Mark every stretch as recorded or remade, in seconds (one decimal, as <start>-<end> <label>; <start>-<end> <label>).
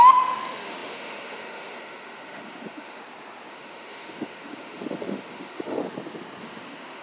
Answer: 0.0-3.0 remade; 3.0-3.5 recorded; 3.5-5.8 remade; 5.8-6.4 recorded; 6.4-7.0 remade